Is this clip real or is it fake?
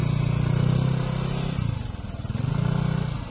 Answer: real